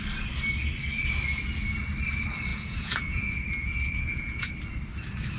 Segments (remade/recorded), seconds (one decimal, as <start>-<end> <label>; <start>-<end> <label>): 0.0-2.5 recorded; 2.5-4.5 remade; 4.5-5.4 recorded